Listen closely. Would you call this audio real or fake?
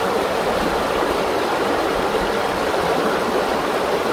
real